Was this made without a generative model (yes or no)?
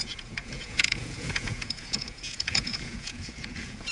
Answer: no